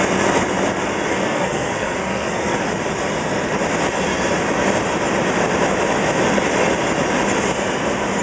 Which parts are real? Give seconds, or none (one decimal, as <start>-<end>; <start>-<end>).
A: 0.0-1.1; 2.6-8.2